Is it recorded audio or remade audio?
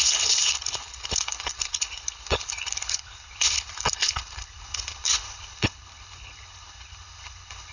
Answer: remade